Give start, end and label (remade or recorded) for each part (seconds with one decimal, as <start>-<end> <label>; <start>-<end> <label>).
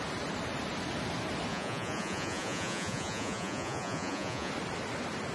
0.0-1.5 recorded; 1.5-4.5 remade; 4.5-5.3 recorded